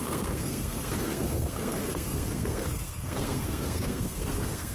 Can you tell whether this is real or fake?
fake